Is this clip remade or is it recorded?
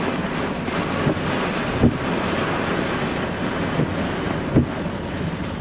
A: recorded